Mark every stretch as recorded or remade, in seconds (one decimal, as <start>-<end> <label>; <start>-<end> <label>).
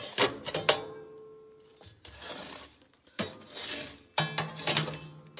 0.0-5.4 recorded